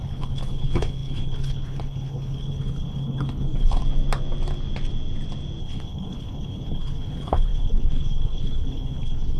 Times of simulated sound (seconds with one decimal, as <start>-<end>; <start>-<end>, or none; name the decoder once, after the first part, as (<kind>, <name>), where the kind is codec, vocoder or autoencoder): 0.0-3.8 (codec, HILCodec); 5.6-9.4